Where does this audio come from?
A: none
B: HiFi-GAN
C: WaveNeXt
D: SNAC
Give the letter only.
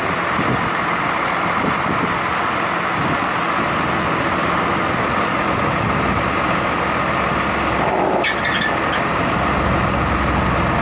A